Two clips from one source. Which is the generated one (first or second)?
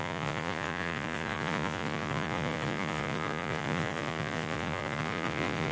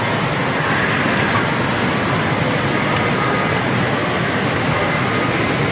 first